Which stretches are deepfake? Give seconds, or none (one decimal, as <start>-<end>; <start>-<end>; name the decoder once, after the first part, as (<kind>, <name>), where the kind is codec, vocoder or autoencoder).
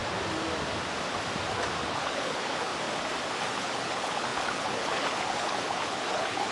1.8-2.7 (codec, HILCodec); 3.5-6.5